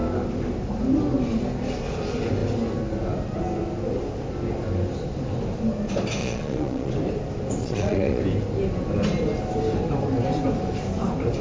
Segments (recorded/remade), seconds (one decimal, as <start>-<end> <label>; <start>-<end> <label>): 0.0-6.2 recorded; 6.2-6.9 remade; 6.9-7.6 recorded; 7.6-8.2 remade; 8.2-11.4 recorded

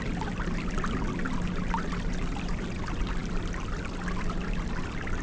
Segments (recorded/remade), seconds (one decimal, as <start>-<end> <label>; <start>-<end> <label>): 0.0-5.2 recorded

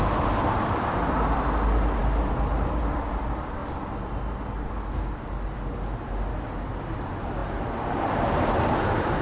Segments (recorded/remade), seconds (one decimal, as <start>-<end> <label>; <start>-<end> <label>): 0.0-3.6 remade; 3.6-6.5 recorded; 6.5-7.4 remade; 7.4-8.0 recorded; 8.0-9.2 remade